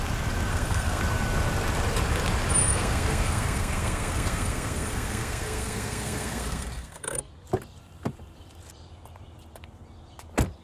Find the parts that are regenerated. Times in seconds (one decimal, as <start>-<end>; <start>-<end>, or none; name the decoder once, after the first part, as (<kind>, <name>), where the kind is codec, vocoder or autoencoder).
0.5-1.0 (codec, SNAC); 2.6-7.3